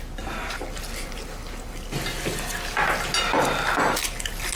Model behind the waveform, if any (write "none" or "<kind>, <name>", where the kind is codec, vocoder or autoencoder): none